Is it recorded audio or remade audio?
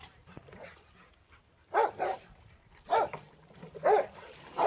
remade